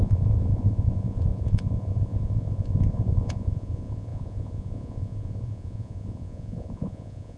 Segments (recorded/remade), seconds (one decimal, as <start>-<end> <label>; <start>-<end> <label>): 0.0-7.4 remade